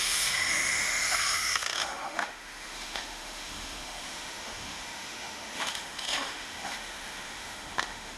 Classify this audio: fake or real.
fake